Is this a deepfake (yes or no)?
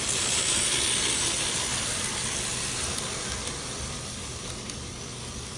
no